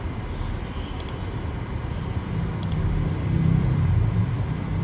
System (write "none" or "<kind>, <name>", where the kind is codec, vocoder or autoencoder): vocoder, BigVGAN v2